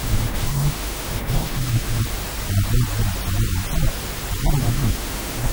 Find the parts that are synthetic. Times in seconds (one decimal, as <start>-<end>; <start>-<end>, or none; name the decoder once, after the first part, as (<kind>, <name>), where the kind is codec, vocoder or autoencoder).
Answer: 0.0-2.0 (autoencoder, DAC-VAE); 4.6-5.5

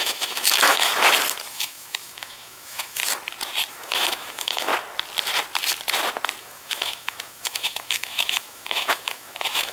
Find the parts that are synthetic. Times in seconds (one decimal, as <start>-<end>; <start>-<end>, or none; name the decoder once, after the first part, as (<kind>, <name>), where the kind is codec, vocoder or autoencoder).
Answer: 0.0-0.9 (autoencoder, DAC-VAE); 1.5-3.0; 3.7-4.7; 6.4-9.7

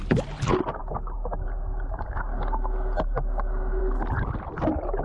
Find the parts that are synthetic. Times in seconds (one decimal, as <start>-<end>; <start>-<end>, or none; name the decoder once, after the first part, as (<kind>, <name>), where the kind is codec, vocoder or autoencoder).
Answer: none

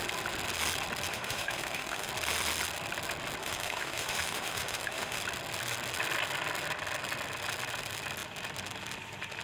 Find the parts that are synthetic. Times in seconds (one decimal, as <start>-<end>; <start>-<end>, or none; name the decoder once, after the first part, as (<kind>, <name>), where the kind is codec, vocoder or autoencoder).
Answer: 1.1-2.1 (autoencoder, DAC-VAE); 3.4-5.2

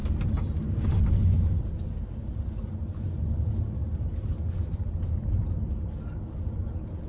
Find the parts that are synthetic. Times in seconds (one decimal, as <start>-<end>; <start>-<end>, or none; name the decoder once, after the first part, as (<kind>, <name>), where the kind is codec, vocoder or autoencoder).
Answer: none